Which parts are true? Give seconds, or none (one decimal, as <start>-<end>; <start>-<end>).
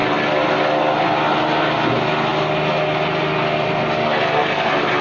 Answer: 0.0-5.0